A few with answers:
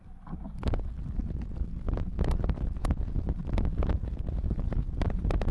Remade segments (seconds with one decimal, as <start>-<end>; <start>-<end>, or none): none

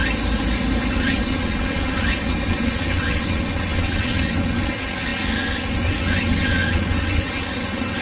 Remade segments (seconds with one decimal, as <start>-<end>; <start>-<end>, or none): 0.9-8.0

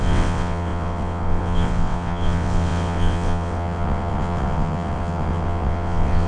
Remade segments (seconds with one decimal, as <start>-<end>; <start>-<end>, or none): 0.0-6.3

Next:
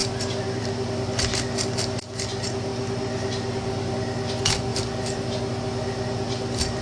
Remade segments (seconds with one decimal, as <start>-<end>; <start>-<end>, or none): none

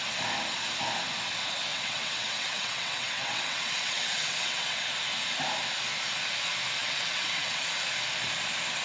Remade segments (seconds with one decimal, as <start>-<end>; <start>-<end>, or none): 1.7-4.9; 6.8-7.7